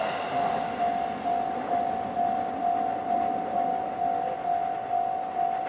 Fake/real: real